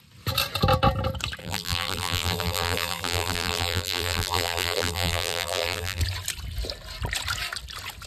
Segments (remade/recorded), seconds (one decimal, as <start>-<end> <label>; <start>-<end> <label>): 0.0-1.4 recorded; 1.4-6.0 remade; 6.0-8.1 recorded